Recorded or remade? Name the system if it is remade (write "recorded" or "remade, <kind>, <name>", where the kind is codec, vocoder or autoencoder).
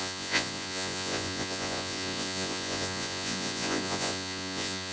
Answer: remade, vocoder, Vocos